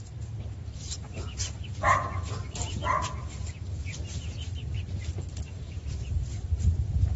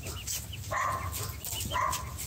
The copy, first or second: first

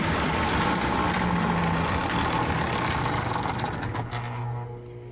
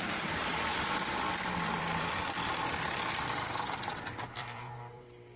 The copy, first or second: second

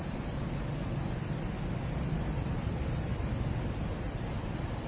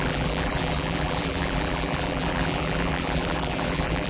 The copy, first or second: second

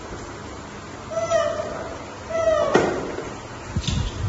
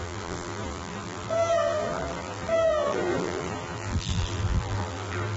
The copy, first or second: second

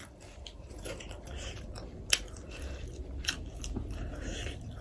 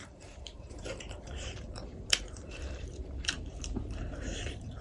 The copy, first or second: second